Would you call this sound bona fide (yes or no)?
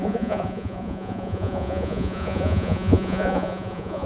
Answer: no